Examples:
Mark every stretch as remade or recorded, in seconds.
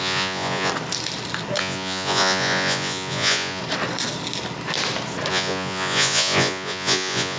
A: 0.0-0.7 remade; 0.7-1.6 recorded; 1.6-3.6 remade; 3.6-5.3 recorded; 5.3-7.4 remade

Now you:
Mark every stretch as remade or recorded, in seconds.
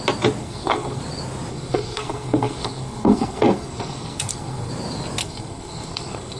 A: 0.0-0.4 recorded; 0.4-1.0 remade; 1.0-1.5 recorded; 1.5-4.7 remade; 4.7-5.2 recorded; 5.2-6.4 remade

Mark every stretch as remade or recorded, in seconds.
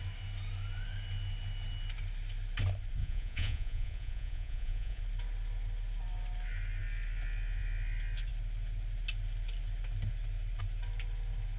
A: 0.0-3.0 recorded; 3.0-5.0 remade; 5.0-11.6 recorded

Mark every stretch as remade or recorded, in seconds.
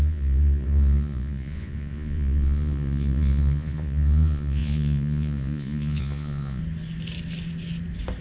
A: 0.0-6.6 remade; 6.6-8.2 recorded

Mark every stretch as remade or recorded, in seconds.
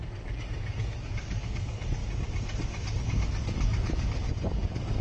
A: 0.0-2.0 remade; 2.0-3.0 recorded; 3.0-5.0 remade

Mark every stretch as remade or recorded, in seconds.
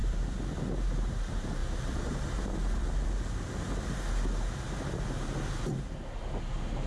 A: 0.0-0.6 remade; 0.6-6.9 recorded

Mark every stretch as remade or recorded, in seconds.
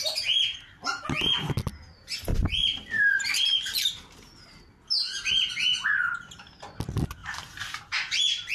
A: 0.0-0.7 remade; 0.7-2.3 recorded; 2.3-4.2 remade; 4.2-7.2 recorded; 7.2-8.5 remade